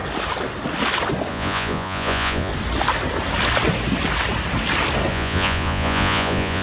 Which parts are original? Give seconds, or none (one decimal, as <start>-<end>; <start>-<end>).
0.0-1.3; 2.5-5.1